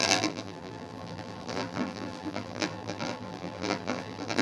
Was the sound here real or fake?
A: fake